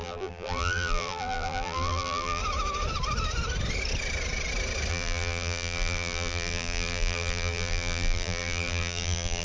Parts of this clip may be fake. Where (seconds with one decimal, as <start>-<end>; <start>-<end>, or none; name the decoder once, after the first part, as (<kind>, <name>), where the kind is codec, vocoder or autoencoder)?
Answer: 0.0-2.4 (vocoder, BigVGAN v2); 4.9-9.4